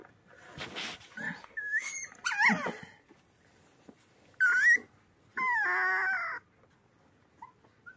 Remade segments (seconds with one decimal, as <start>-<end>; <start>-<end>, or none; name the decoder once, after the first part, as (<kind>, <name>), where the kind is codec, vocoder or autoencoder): 1.4-1.9 (autoencoder, DAC-VAE)